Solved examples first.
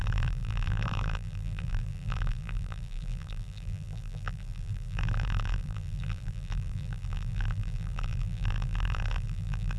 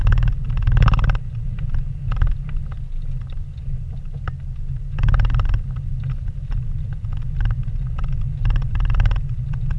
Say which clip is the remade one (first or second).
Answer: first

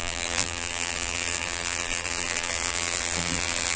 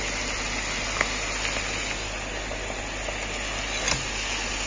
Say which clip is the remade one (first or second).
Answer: first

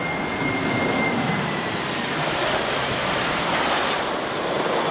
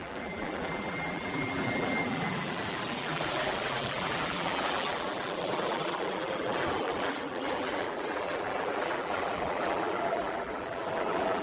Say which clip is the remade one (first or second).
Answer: second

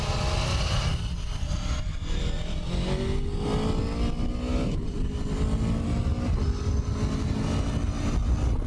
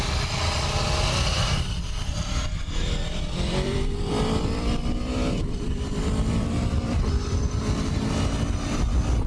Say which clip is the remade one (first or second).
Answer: second